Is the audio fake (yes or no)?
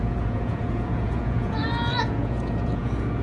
yes